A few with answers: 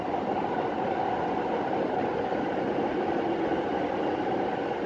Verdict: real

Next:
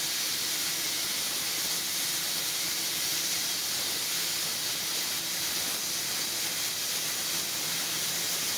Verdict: real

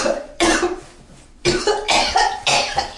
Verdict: real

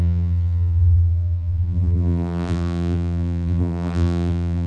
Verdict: fake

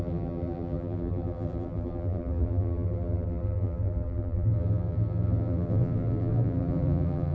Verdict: fake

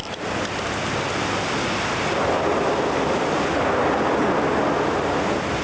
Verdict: real